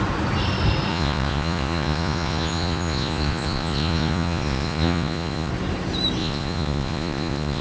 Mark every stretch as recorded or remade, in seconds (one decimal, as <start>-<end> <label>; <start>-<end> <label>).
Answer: 0.0-0.9 recorded; 0.9-5.5 remade; 5.5-6.2 recorded; 6.2-7.6 remade